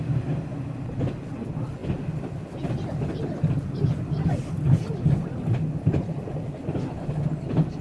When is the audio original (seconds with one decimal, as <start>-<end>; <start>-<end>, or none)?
0.0-7.8